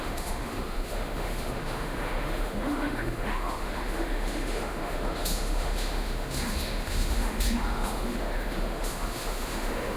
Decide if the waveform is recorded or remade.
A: remade